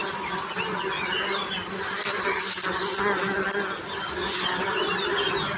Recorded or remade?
recorded